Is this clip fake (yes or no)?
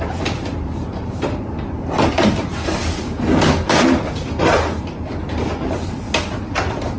yes